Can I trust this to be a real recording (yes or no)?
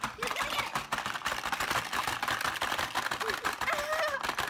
yes